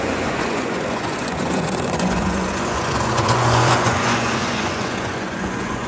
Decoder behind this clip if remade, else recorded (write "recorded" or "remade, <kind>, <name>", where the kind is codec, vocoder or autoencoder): remade, vocoder, Vocos